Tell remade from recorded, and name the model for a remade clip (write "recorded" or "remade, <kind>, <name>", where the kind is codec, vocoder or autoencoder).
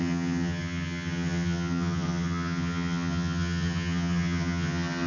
remade, vocoder, HiFi-GAN